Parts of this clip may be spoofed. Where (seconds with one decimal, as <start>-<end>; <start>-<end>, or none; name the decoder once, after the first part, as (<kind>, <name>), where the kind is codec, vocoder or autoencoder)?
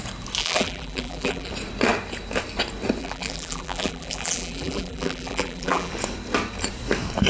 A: 0.4-1.5 (vocoder, BigVGAN v2); 3.0-5.9